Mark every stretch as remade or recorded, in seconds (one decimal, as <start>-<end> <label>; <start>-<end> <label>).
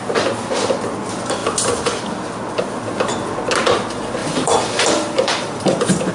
0.0-4.2 recorded; 4.2-6.1 remade